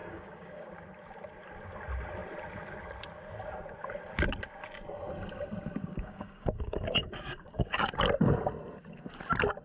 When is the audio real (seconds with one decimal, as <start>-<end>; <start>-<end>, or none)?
0.7-5.8; 7.9-9.6